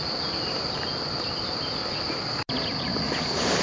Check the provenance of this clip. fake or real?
real